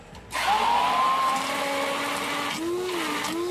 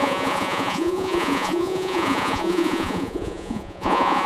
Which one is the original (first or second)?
first